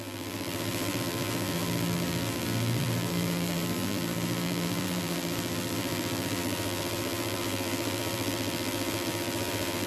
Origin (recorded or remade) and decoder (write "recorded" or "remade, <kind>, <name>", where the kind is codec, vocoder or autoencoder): remade, vocoder, BigVGAN v2